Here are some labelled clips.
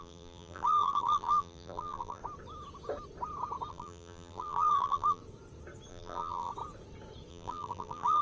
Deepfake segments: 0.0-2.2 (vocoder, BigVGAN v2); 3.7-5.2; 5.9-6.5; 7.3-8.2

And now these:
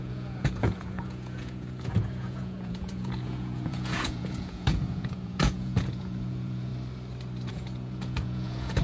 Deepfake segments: 0.0-6.7 (vocoder, Vocos); 7.5-8.8

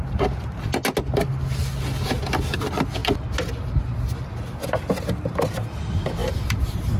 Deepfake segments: 6.2-7.0 (vocoder, BigVGAN v2)

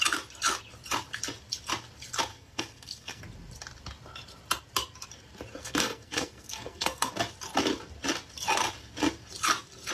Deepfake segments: 2.3-3.2 (codec, SNAC); 5.6-7.1

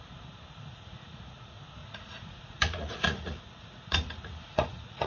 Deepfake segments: 0.7-1.2 (vocoder, Vocos); 1.8-5.1